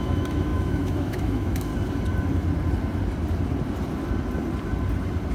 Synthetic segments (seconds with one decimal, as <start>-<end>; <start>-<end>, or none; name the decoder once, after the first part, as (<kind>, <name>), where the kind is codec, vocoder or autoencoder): 0.0-1.7 (autoencoder, DAC-VAE)